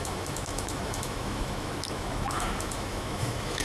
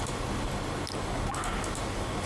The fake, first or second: first